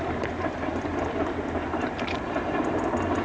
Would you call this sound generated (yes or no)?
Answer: yes